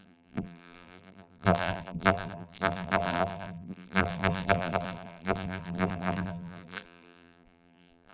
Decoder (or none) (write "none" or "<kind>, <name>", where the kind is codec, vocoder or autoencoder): vocoder, BigVGAN v2